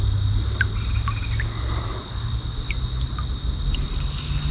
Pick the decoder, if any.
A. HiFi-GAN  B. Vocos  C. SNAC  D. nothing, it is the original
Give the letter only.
D